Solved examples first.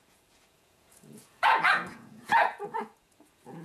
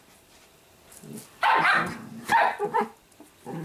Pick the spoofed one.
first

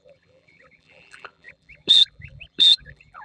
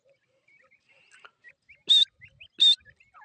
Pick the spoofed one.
first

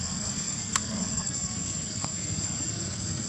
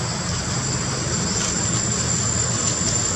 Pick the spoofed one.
first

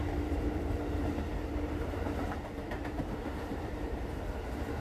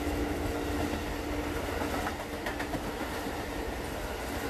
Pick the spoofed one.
first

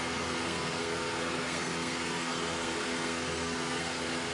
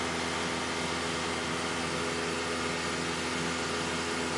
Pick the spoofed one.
first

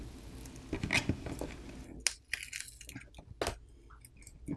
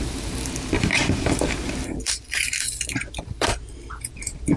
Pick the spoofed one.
second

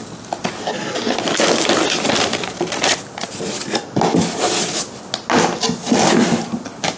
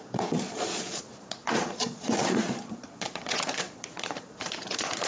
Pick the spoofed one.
second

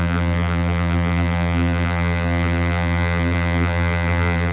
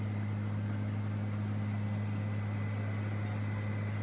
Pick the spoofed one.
first